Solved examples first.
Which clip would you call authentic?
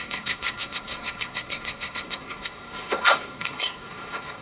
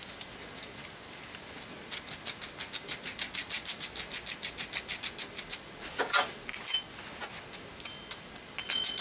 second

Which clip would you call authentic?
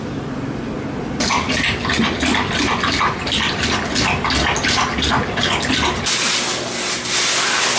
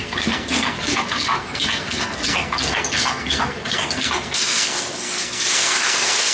first